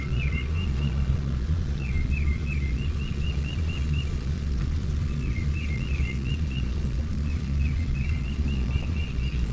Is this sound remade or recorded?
remade